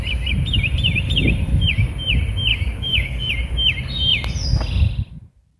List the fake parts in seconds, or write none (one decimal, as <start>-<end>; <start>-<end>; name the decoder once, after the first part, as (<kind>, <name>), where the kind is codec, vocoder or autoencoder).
2.5-3.3 (codec, DAC)